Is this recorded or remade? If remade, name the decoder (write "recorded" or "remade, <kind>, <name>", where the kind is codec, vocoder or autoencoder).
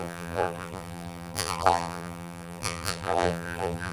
remade, vocoder, BigVGAN v2